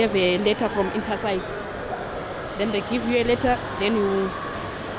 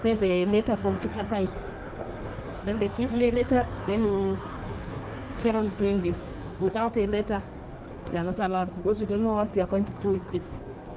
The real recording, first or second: first